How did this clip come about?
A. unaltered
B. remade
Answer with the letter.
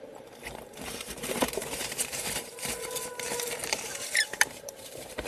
B